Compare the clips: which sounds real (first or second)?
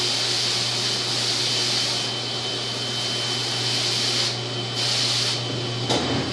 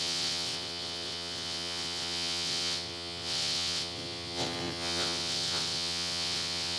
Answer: first